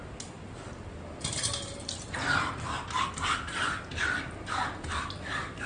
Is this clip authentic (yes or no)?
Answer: yes